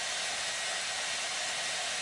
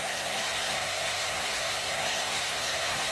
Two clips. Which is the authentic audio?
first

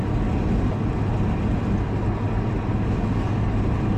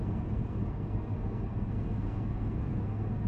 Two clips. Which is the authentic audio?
first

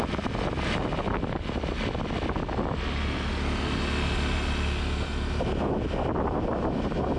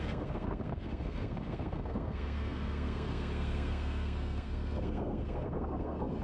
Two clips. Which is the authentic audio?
first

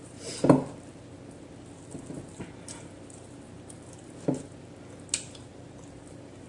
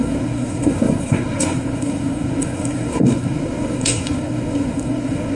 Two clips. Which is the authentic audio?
first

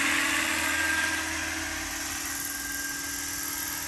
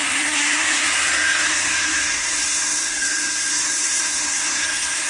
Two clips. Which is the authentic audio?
first